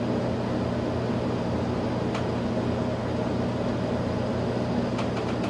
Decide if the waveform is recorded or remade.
recorded